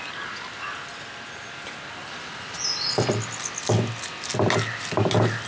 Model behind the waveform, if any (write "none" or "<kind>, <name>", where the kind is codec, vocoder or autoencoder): none